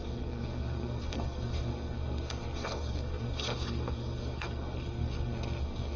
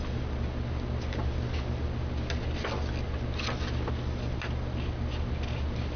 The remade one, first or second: first